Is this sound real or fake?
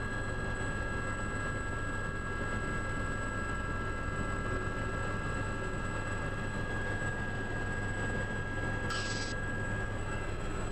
real